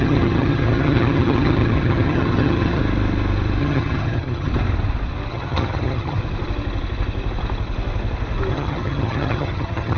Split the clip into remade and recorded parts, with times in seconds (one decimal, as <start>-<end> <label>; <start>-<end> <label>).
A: 0.0-2.8 remade; 2.8-3.6 recorded; 3.6-4.5 remade; 4.5-5.3 recorded; 5.3-6.2 remade; 6.2-8.5 recorded; 8.5-10.0 remade